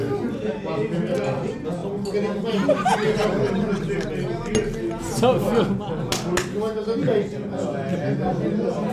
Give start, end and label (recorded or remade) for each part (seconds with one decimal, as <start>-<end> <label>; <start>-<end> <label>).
0.0-8.9 recorded